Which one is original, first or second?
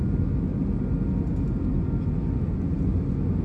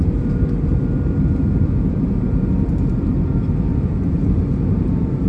first